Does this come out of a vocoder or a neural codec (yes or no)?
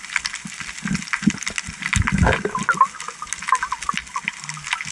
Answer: no